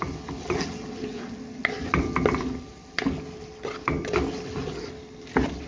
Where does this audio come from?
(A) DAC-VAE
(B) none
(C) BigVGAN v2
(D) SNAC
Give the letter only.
B